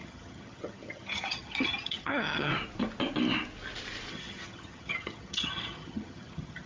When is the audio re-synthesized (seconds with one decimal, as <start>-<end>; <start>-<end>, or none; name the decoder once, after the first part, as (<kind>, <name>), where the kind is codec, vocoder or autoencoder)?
0.0-2.5 (vocoder, HiFi-GAN); 4.1-6.7